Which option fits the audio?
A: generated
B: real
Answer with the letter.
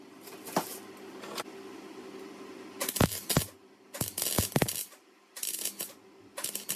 B